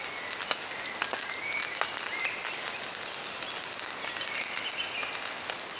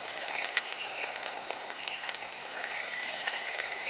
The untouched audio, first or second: first